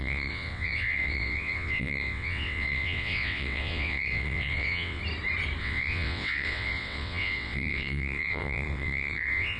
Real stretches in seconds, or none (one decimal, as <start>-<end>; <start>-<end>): 5.0-5.6